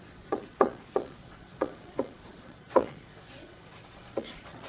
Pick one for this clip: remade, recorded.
remade